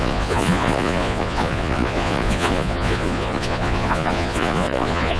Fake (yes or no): yes